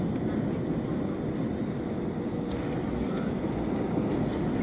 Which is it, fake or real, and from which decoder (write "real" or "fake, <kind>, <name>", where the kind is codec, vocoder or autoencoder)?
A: real